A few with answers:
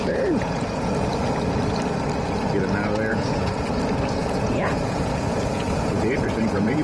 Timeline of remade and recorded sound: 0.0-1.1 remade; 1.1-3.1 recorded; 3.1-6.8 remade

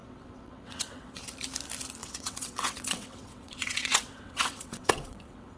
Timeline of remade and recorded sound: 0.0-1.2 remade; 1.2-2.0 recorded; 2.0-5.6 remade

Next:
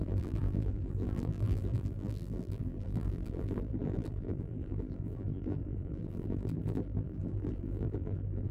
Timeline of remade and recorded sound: 0.0-8.5 remade

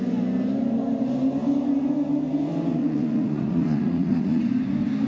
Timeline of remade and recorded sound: 0.0-2.8 recorded; 2.8-4.4 remade; 4.4-5.1 recorded